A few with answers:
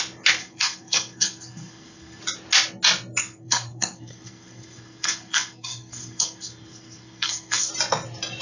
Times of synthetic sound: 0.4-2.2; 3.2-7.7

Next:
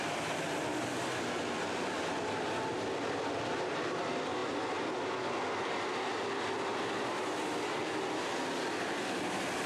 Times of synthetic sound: none

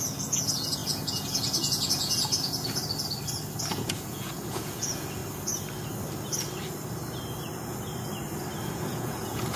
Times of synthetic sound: 0.0-2.8; 3.6-5.2; 8.7-9.6

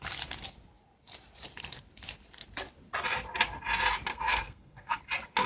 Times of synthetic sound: 4.1-5.0

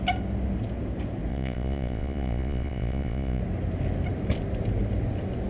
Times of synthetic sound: 1.3-3.4

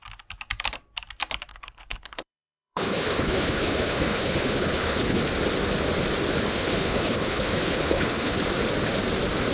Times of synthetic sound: 1.5-5.2; 6.5-8.4

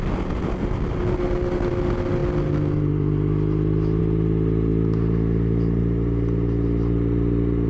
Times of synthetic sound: none

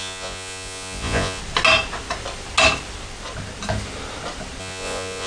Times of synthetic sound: 0.0-1.4; 4.6-5.3